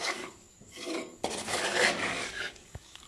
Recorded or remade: remade